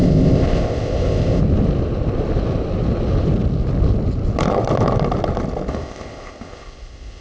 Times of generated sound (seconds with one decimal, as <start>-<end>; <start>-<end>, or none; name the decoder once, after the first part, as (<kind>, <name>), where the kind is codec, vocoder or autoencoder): 0.0-1.4 (codec, ZipCodec); 5.7-7.2